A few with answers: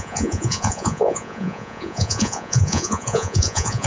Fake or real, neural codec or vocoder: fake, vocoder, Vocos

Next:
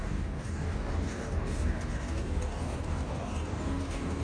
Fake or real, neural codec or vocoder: fake, codec, DAC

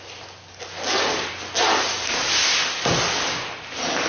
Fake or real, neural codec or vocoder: real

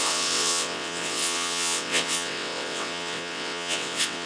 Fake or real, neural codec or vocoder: fake, vocoder, WaveNeXt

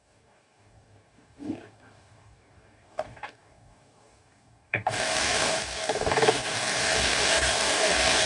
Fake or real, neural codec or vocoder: fake, codec, DAC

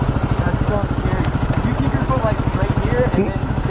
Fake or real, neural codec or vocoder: real